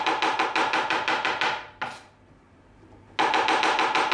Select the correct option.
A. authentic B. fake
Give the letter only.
A